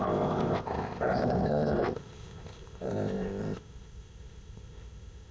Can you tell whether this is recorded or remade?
remade